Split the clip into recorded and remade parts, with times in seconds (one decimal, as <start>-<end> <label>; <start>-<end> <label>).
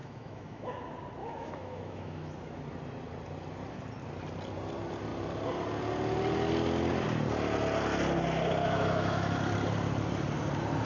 0.0-0.7 remade; 0.7-1.2 recorded; 1.2-2.3 remade; 2.3-8.6 recorded; 8.6-9.4 remade; 9.4-10.9 recorded